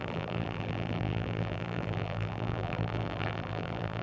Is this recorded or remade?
remade